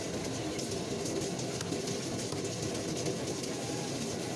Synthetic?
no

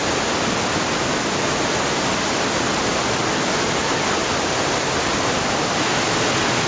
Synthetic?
no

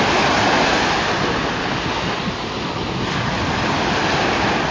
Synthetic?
no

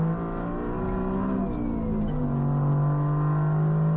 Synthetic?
no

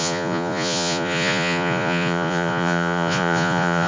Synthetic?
yes